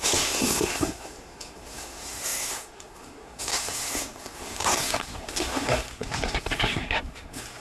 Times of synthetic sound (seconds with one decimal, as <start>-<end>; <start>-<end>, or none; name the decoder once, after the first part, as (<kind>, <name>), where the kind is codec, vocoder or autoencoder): 0.0-7.6 (codec, SNAC)

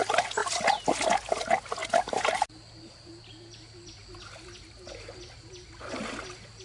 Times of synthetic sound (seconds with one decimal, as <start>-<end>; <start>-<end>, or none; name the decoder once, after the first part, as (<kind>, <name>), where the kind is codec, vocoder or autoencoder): none